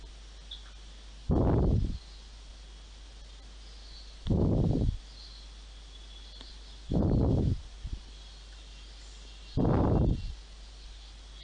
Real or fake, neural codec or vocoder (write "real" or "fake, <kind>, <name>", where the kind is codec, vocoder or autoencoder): real